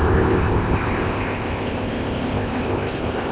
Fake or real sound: fake